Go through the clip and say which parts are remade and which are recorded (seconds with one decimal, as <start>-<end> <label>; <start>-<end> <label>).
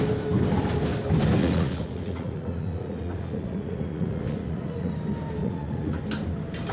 0.0-1.4 recorded; 1.4-4.9 remade; 4.9-5.4 recorded; 5.4-6.0 remade; 6.0-6.7 recorded